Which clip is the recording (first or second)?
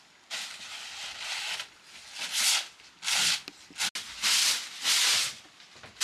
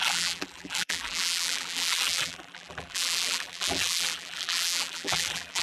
first